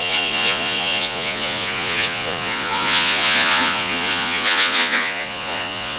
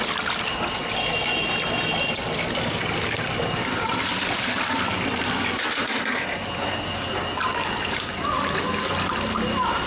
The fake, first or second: first